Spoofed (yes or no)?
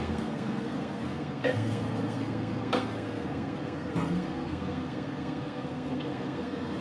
yes